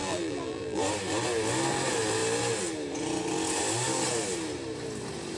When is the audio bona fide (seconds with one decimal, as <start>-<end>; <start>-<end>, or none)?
0.8-5.4